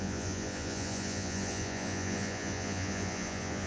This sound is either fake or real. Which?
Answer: fake